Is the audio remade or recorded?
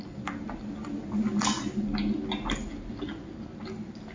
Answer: recorded